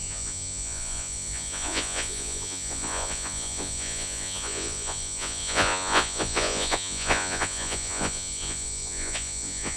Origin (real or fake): fake